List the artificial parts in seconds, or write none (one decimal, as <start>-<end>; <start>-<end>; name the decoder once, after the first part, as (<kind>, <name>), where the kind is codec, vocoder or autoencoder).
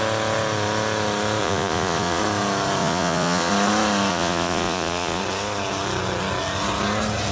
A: 1.4-2.2 (vocoder, Vocos); 2.8-3.5; 4.1-5.2